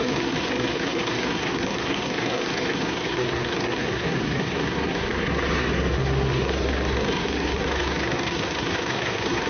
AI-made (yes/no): yes